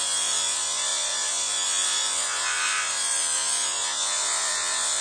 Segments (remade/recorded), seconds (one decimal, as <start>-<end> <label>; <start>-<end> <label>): 0.0-5.0 remade

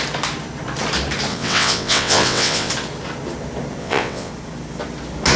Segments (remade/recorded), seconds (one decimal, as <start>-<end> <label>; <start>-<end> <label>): 0.0-1.3 recorded; 1.3-2.7 remade; 2.7-3.8 recorded; 3.8-4.3 remade; 4.3-5.4 recorded